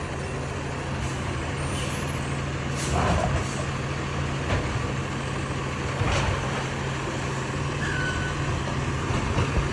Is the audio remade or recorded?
recorded